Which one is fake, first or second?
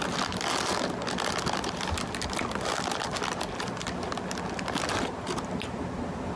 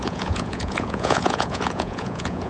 second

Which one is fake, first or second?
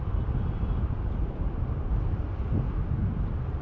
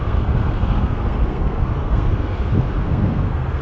second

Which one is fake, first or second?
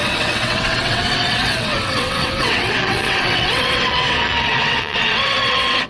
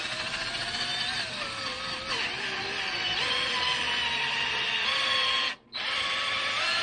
first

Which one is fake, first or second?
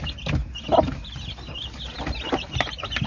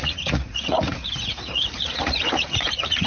second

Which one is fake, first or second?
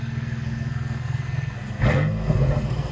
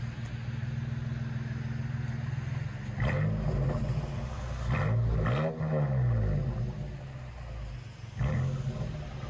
first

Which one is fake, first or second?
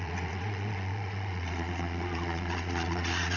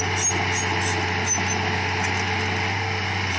first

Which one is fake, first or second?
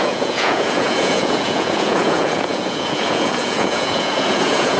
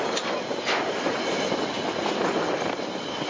first